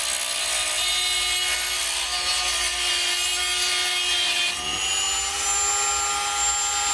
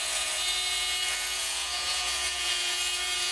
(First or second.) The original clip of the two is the first